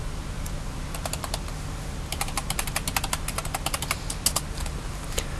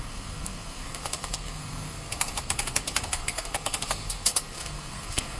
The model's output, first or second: second